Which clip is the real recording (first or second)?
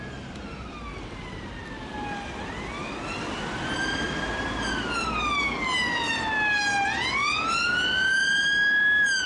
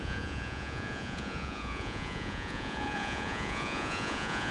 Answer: first